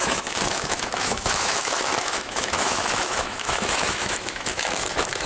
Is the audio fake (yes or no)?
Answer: yes